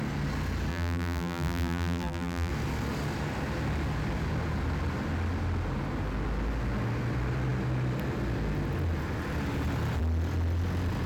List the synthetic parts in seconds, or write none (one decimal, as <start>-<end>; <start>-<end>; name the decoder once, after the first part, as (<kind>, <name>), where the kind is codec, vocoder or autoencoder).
0.7-2.5 (vocoder, BigVGAN v2)